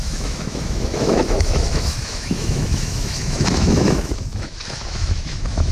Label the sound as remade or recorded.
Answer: remade